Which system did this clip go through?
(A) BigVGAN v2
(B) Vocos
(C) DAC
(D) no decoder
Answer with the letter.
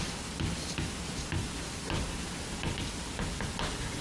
D